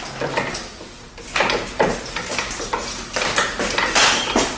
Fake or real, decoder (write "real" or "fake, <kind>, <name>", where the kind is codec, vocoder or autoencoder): real